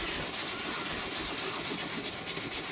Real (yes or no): yes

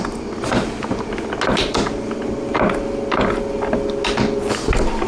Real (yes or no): yes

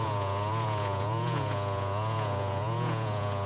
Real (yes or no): no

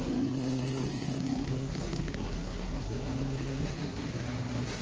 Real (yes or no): no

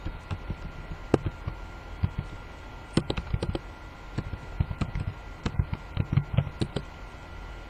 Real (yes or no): yes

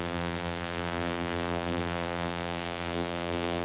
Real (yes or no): no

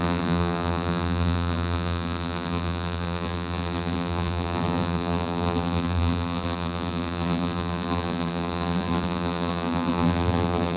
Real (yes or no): no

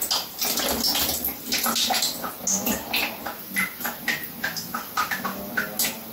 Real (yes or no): yes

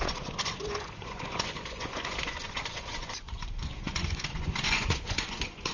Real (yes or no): no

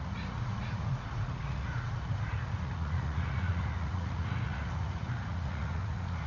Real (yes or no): no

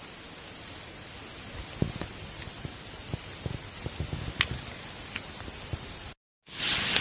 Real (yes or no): yes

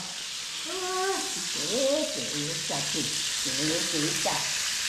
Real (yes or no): yes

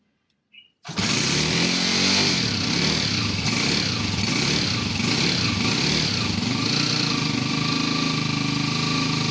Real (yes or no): yes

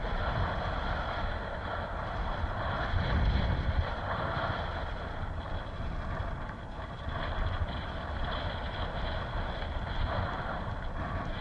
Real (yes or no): yes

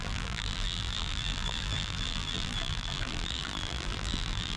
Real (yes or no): no